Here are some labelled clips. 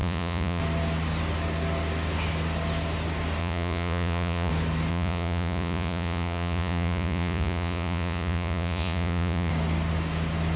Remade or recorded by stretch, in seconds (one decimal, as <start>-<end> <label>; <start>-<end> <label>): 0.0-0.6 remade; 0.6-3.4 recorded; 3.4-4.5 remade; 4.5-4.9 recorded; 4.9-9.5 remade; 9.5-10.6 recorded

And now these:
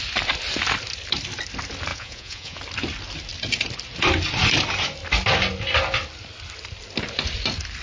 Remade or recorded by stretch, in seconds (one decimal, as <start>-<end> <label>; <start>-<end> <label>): 0.0-1.9 recorded; 1.9-2.6 remade; 2.6-7.8 recorded

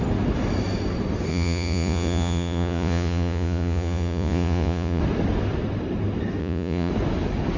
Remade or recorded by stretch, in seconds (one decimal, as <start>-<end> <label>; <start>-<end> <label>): 0.0-1.3 recorded; 1.3-5.0 remade; 5.0-6.4 recorded; 6.4-6.9 remade; 6.9-7.6 recorded

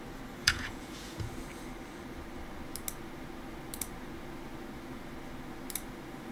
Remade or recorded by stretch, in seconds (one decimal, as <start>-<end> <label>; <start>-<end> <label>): 0.0-0.4 recorded; 0.4-1.3 remade; 1.3-6.3 recorded

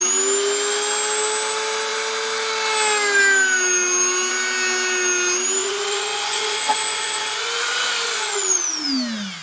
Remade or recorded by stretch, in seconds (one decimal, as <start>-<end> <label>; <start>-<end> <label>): 0.0-5.6 recorded; 5.6-8.9 remade; 8.9-9.4 recorded

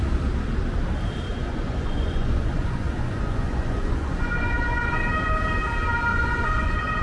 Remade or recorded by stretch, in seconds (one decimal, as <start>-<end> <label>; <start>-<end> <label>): 0.0-1.3 recorded; 1.3-5.0 remade; 5.0-6.1 recorded; 6.1-7.0 remade

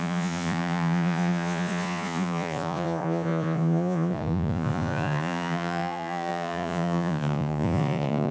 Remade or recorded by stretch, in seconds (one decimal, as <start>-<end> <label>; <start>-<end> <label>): 0.0-8.3 remade

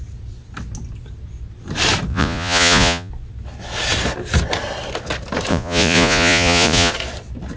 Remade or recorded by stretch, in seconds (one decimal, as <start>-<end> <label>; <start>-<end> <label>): 0.0-2.1 recorded; 2.1-3.1 remade; 3.1-5.5 recorded; 5.5-6.9 remade; 6.9-7.6 recorded